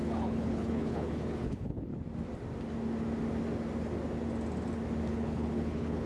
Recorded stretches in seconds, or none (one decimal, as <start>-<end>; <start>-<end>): 1.9-5.1